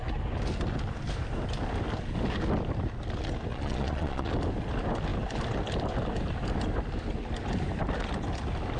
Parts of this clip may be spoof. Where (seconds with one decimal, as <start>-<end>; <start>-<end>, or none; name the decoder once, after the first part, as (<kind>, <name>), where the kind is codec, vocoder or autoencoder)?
3.5-4.3 (vocoder, Vocos)